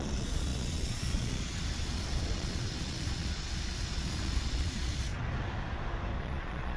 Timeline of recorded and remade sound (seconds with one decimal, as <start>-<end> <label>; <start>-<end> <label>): 0.0-5.1 remade; 5.1-6.2 recorded; 6.2-6.8 remade